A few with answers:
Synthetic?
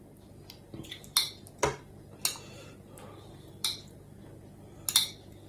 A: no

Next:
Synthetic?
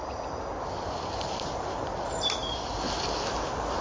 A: no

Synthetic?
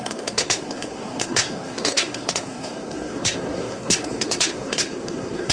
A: yes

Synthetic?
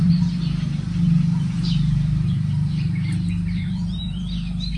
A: yes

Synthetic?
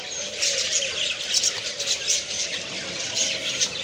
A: no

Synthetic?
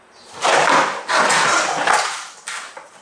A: no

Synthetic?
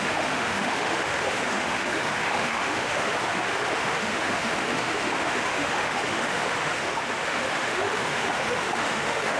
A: yes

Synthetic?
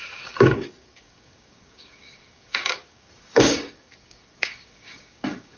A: yes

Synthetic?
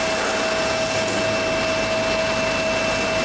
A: no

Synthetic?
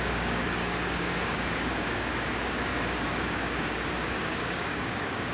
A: yes